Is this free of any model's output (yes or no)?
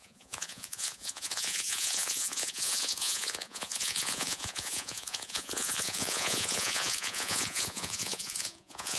no